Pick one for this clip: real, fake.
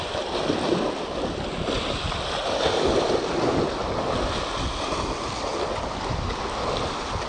real